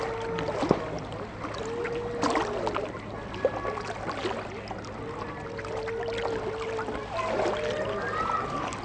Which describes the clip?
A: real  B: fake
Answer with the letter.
A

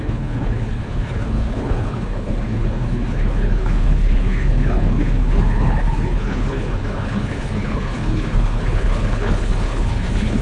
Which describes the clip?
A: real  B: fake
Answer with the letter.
B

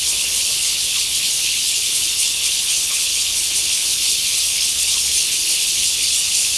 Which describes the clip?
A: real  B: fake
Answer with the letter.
B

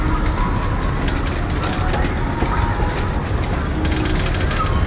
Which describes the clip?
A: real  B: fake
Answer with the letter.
A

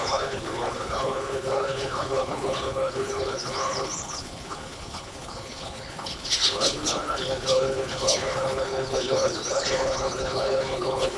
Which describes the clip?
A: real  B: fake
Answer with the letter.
B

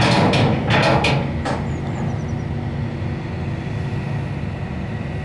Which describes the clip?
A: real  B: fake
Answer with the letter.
A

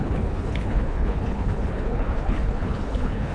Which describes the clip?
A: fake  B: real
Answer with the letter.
A